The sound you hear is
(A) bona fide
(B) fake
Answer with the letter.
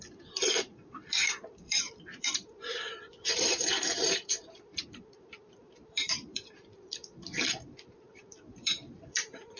B